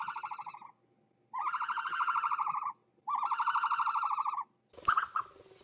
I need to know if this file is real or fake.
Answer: real